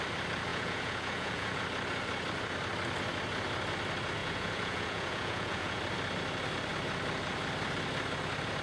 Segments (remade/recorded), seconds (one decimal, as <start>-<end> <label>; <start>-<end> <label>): 0.0-0.5 recorded; 0.5-1.6 remade; 1.6-4.2 recorded; 4.2-5.8 remade; 5.8-8.6 recorded